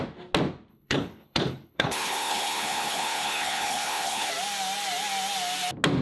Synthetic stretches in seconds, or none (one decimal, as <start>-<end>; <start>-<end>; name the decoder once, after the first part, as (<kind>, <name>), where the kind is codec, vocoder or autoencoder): 0.7-4.3 (codec, HILCodec)